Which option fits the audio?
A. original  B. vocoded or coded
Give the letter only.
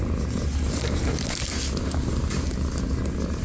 B